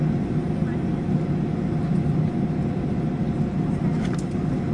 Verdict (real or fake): real